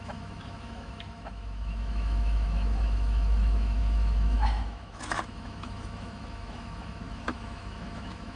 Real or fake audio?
fake